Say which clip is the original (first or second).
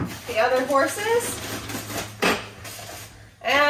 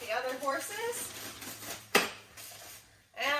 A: first